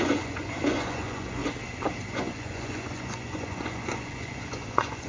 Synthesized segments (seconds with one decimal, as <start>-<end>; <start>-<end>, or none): 0.0-1.4; 2.0-5.1